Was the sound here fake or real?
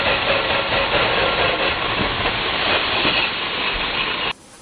real